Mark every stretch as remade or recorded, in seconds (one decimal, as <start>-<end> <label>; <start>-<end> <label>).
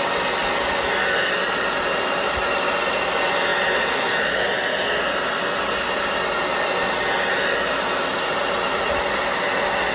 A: 0.0-9.9 recorded